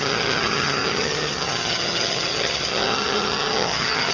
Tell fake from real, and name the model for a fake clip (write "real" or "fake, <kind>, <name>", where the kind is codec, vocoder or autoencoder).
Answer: fake, vocoder, HiFi-GAN